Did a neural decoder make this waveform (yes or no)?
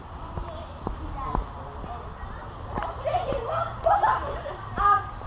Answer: no